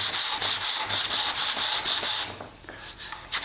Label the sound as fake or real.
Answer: fake